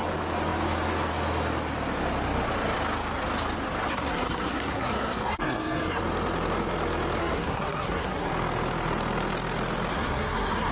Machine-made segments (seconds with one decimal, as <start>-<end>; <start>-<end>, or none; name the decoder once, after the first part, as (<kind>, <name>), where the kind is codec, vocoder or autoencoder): 3.9-6.0 (codec, SNAC); 7.2-8.3; 9.9-10.7